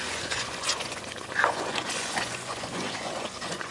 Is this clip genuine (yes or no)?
no